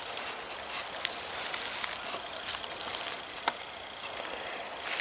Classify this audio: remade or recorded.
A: recorded